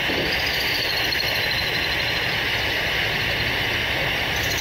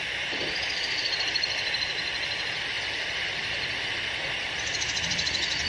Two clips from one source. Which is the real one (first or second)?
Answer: first